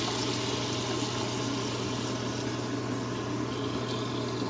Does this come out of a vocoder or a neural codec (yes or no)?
no